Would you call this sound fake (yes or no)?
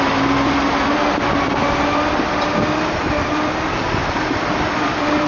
no